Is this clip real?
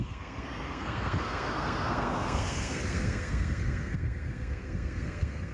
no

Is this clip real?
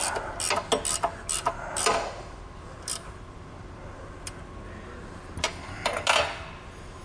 yes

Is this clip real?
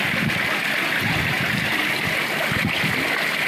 yes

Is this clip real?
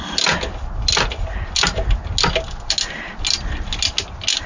yes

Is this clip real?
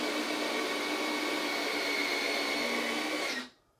yes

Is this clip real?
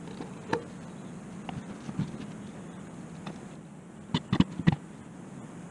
yes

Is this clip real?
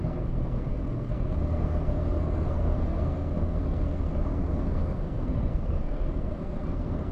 no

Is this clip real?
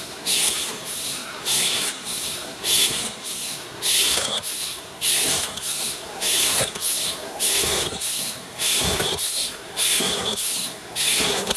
no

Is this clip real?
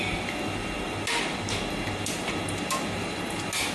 yes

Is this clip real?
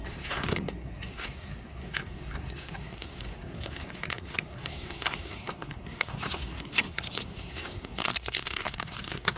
no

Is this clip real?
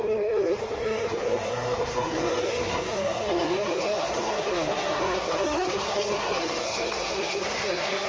no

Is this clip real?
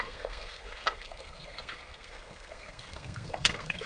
no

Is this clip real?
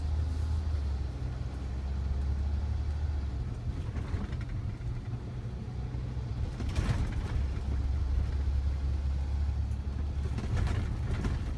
yes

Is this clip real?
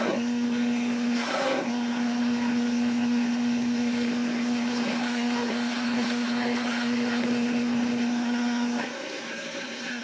no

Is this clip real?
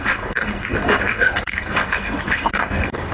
no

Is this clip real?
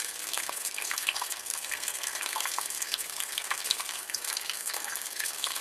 no